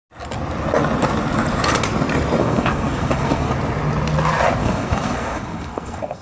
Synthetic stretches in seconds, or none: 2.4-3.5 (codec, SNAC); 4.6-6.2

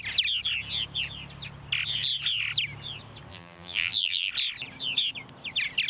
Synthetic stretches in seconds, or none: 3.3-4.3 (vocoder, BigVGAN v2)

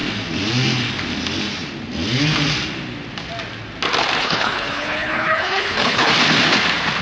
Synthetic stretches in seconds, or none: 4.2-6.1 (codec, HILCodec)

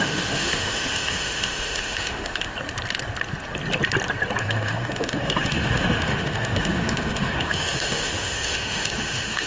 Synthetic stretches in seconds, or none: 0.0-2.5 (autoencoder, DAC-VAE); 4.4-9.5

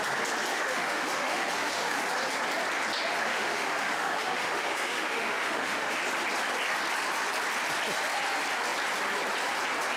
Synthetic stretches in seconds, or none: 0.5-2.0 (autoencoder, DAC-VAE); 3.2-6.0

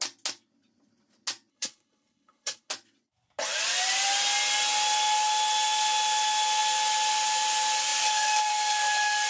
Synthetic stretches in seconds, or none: 1.5-2.7 (codec, HILCodec)

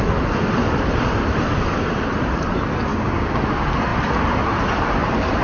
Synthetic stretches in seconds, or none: 2.9-3.4 (codec, DAC)